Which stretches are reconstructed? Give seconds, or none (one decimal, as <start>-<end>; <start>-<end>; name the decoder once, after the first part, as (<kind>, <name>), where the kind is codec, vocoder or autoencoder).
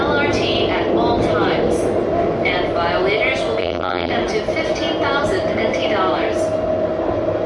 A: 3.6-4.1 (vocoder, BigVGAN v2)